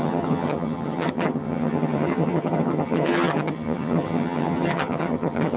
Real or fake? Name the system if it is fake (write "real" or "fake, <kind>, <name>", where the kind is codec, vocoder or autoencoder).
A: fake, vocoder, HiFi-GAN